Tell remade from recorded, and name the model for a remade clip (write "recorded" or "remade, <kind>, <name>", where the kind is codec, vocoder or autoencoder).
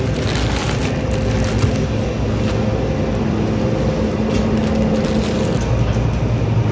recorded